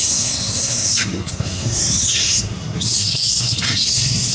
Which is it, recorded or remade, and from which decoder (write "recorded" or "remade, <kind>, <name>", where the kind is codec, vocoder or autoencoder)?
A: remade, codec, SNAC